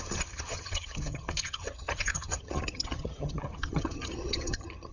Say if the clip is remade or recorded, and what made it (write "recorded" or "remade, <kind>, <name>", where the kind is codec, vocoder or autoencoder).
remade, vocoder, HiFi-GAN